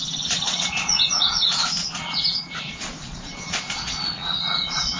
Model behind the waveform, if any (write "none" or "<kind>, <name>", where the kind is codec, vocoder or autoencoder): vocoder, Vocos